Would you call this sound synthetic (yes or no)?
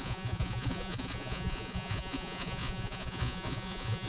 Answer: yes